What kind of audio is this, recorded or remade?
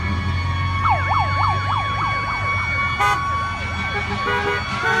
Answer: recorded